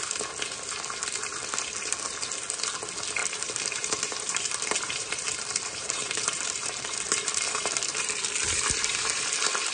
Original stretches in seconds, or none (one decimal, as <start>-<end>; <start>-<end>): 0.0-3.2; 8.1-9.7